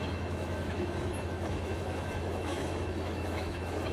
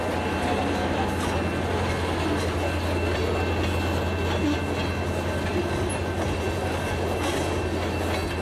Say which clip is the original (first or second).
second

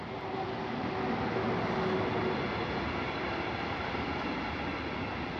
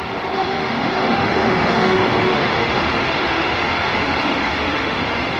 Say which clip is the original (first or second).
first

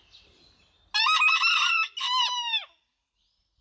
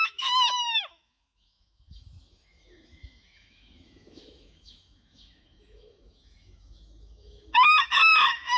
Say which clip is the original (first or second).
first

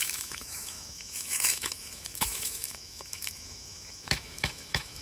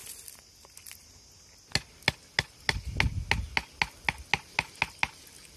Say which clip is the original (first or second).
second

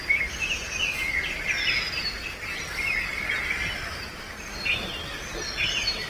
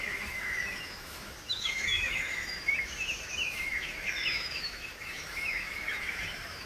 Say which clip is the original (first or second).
first